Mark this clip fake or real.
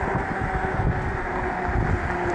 real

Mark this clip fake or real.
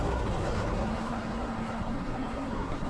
fake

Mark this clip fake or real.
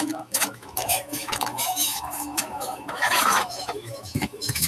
fake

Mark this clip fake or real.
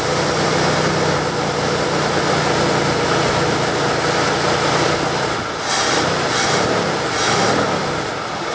real